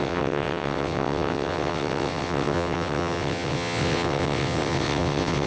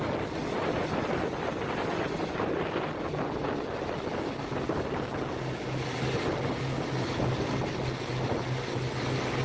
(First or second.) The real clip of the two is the second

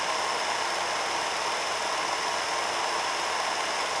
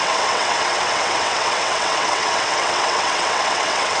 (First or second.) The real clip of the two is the first